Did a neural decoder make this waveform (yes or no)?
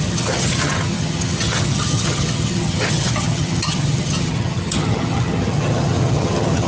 yes